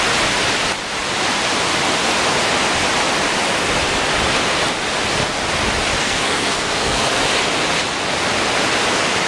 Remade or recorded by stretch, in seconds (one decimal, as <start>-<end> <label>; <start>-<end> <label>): 0.0-6.0 recorded; 6.0-7.2 remade; 7.2-9.3 recorded